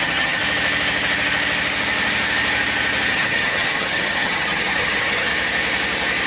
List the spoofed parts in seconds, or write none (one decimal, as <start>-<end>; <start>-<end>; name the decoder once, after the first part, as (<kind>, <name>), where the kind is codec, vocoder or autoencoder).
0.0-0.4 (vocoder, HiFi-GAN); 3.1-5.3